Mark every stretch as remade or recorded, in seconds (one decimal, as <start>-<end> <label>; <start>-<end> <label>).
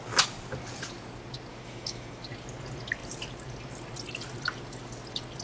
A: 0.0-1.5 recorded; 1.5-2.2 remade; 2.2-5.4 recorded